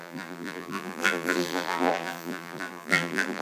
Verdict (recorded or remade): remade